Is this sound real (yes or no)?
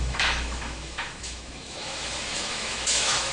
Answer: no